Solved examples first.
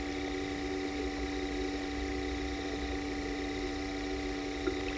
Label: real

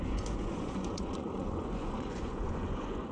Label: fake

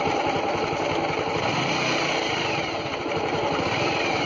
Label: real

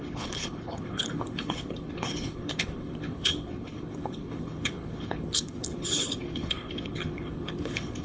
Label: fake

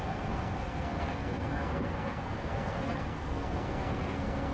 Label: fake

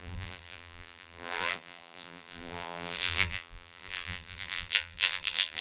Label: fake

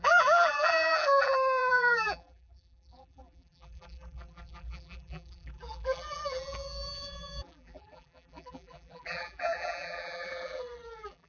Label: fake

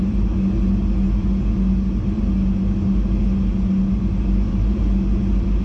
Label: real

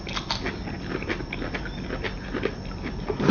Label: real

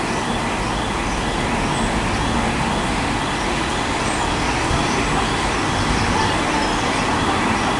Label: real